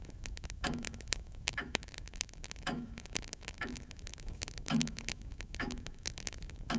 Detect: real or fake fake